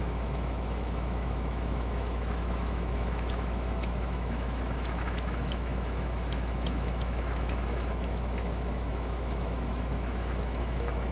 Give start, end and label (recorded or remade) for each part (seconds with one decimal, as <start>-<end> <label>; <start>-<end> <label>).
0.0-11.1 remade